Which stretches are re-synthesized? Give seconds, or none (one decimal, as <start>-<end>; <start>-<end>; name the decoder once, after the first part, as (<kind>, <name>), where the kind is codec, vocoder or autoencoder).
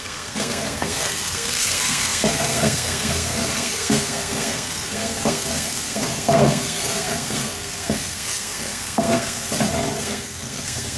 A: 0.0-9.5 (codec, SNAC); 10.0-11.0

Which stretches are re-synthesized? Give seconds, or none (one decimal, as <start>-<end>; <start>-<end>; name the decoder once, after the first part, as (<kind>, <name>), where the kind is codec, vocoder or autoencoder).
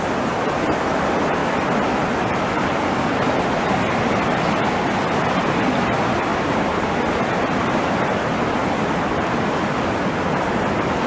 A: none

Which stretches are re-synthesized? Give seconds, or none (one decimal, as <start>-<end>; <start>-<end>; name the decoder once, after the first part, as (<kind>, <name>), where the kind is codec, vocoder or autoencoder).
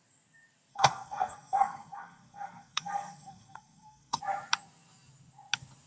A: 0.7-4.2 (codec, SNAC)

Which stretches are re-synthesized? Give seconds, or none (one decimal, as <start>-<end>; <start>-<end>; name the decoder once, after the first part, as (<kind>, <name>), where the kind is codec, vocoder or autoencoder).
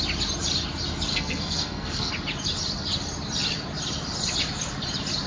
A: 1.1-2.1 (codec, SNAC)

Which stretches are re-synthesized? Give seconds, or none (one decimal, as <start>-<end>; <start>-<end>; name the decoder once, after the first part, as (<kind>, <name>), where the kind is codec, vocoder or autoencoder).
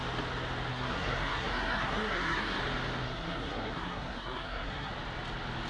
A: 0.7-2.6 (codec, SNAC); 3.0-4.9